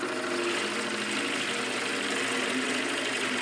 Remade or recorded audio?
recorded